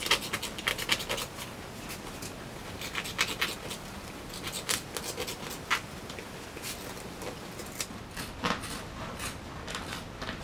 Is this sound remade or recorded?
recorded